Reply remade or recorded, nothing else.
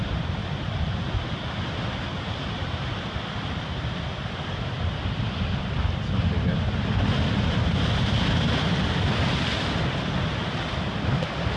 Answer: recorded